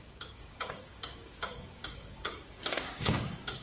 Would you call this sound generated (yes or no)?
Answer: yes